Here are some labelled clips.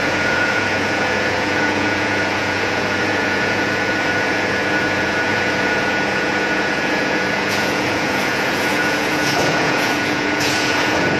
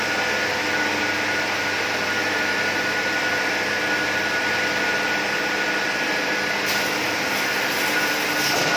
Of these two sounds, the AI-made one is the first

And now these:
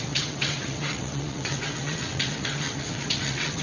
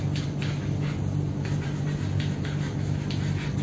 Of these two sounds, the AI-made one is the first